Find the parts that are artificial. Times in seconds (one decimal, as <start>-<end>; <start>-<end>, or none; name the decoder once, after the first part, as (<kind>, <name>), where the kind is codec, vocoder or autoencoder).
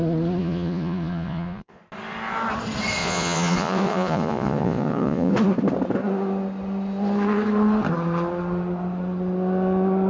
0.4-1.8 (vocoder, Vocos); 3.0-5.3